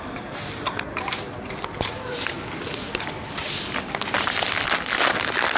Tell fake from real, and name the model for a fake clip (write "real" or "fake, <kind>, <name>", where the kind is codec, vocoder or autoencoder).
real